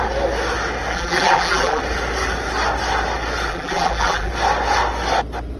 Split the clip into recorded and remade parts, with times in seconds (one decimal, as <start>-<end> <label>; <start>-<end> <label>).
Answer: 0.0-0.9 recorded; 0.9-1.8 remade; 1.8-3.5 recorded; 3.5-4.3 remade; 4.3-5.6 recorded